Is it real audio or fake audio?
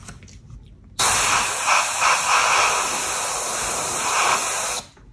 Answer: real